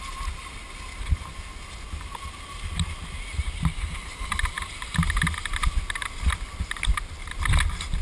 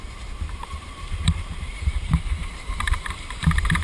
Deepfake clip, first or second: second